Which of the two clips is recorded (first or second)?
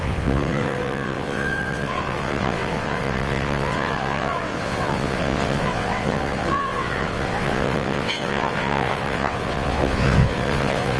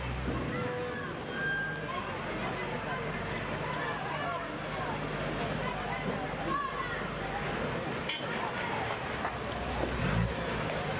second